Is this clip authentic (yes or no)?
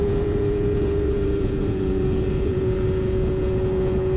no